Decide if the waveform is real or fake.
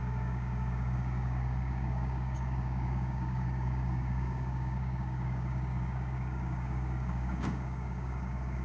fake